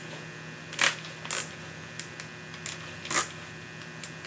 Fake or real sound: real